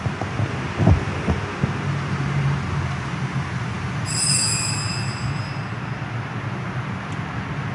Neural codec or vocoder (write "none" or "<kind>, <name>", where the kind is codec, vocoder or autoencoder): none